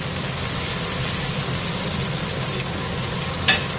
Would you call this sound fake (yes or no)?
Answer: no